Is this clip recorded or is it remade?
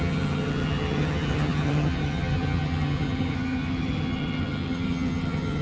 remade